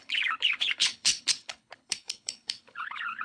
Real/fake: fake